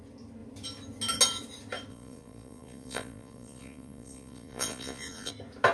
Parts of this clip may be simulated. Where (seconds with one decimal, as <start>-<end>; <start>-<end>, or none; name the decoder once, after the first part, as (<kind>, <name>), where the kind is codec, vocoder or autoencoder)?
1.9-5.3 (vocoder, Vocos)